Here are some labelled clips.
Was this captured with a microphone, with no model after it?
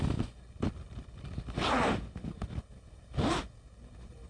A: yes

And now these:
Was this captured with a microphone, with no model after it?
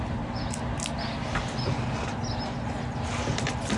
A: yes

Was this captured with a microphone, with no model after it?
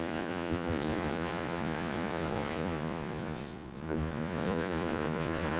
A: no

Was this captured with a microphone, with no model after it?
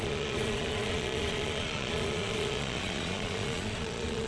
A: no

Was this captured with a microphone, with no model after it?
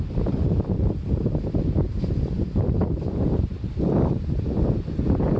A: yes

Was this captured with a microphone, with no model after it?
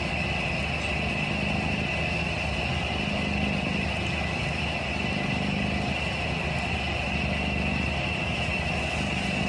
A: yes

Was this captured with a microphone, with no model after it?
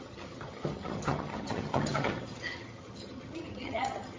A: no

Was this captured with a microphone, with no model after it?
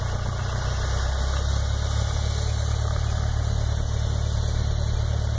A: yes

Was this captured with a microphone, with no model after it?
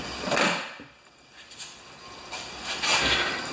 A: yes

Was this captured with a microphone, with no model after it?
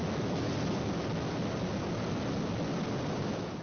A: yes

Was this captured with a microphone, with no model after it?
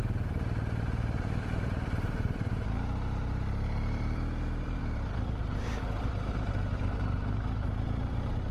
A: no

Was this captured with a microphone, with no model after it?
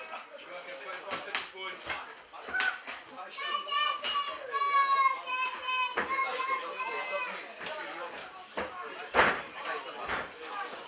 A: yes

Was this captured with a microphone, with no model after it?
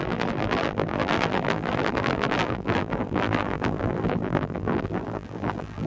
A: no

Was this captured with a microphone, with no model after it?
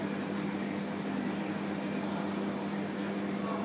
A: yes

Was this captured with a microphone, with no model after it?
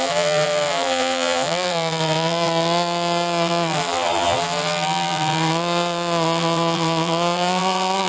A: no